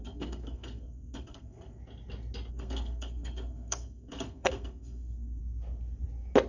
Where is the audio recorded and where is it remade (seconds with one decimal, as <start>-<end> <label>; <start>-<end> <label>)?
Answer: 0.0-1.8 remade; 1.8-2.5 recorded; 2.5-5.4 remade; 5.4-6.5 recorded